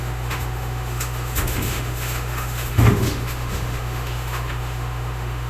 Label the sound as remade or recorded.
remade